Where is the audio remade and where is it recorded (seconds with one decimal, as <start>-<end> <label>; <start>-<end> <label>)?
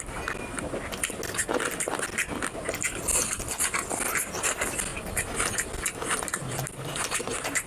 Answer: 0.0-7.7 recorded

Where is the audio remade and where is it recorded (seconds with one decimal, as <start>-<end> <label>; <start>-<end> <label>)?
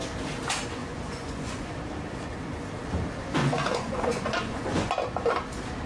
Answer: 0.0-0.8 recorded; 0.8-1.7 remade; 1.7-3.4 recorded; 3.4-4.9 remade; 4.9-5.9 recorded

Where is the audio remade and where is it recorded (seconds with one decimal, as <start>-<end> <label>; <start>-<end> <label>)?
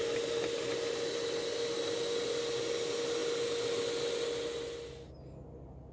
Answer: 0.0-5.9 recorded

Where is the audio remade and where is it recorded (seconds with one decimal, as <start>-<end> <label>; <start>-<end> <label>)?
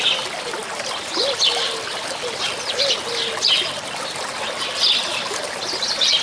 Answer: 0.0-6.2 recorded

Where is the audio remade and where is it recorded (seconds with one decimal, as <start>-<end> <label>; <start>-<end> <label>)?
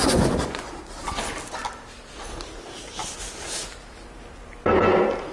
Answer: 0.0-0.7 remade; 0.7-5.3 recorded